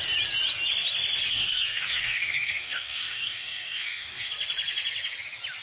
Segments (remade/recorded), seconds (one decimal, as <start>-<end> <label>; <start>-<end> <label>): 0.0-1.3 recorded; 1.3-4.3 remade; 4.3-5.6 recorded